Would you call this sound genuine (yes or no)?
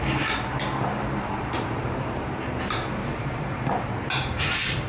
no